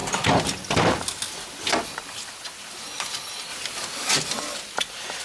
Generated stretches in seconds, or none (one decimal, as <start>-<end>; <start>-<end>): none